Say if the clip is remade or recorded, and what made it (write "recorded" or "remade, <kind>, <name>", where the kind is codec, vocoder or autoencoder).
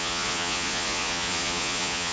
remade, vocoder, Vocos